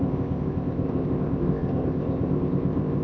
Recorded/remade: remade